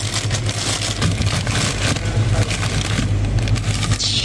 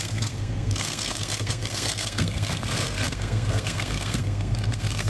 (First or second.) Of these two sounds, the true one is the first